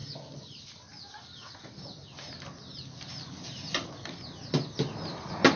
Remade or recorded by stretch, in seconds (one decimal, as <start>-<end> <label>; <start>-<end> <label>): 0.0-5.6 recorded